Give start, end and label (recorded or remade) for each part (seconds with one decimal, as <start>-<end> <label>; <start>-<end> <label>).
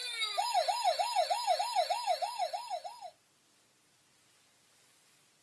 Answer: 0.0-5.4 recorded